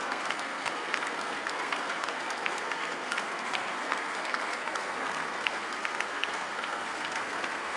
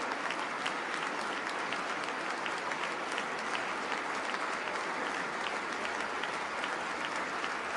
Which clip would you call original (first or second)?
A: second